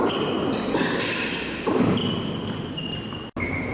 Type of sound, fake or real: real